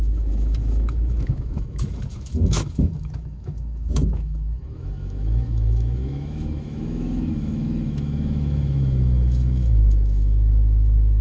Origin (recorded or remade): remade